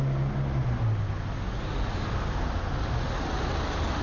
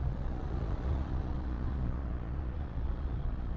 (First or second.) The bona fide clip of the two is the first